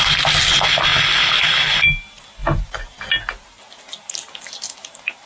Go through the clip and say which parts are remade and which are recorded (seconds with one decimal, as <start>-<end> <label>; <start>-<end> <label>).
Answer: 0.0-5.3 recorded